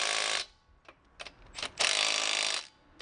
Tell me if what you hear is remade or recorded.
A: recorded